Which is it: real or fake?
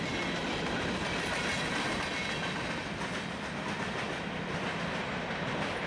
real